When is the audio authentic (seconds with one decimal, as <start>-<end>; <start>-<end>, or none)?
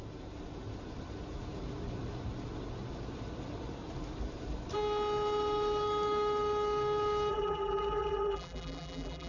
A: 0.0-7.3